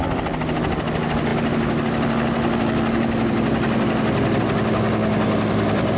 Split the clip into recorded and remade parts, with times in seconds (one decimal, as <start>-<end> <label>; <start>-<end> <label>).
0.0-6.0 recorded